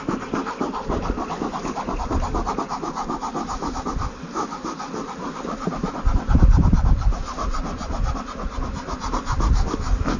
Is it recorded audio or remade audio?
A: recorded